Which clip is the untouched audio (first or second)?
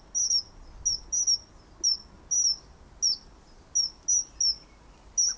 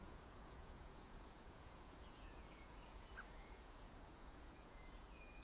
first